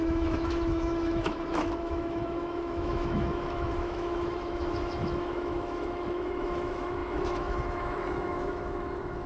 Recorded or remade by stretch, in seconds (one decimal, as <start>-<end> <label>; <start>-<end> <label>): 0.0-9.3 remade